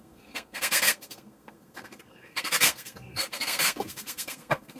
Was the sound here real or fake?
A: fake